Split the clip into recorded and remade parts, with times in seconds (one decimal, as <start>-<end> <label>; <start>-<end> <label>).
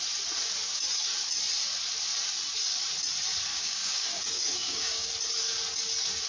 0.0-3.5 recorded; 3.5-5.1 remade; 5.1-6.3 recorded